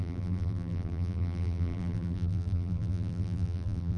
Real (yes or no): no